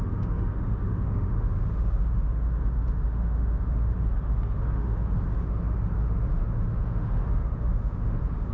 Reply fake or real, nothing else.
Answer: fake